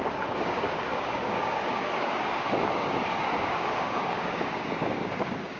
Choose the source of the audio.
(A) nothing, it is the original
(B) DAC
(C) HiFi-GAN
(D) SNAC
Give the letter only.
B